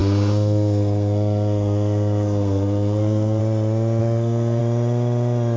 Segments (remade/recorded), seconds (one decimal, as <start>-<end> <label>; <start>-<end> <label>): 0.0-3.4 remade; 3.4-4.0 recorded; 4.0-4.6 remade; 4.6-5.6 recorded